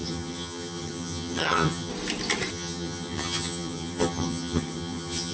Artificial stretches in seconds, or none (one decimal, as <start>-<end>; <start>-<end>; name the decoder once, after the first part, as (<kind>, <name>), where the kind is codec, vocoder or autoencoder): 0.0-1.9 (vocoder, HiFi-GAN); 2.5-5.3